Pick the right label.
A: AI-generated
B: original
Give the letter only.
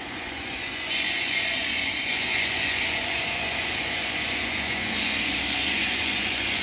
A